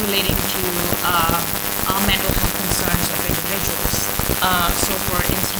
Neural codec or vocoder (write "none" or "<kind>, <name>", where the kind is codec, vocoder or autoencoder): none